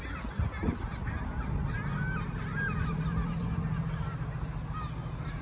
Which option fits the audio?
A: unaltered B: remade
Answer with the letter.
A